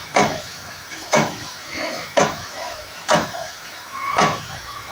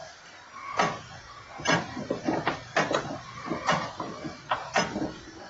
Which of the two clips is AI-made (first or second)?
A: first